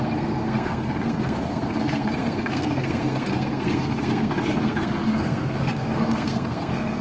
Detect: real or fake fake